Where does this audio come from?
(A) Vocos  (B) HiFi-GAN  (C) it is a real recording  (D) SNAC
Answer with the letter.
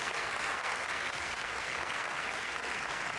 D